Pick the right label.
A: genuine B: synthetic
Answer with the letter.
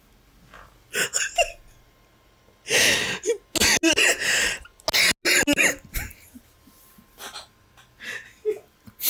A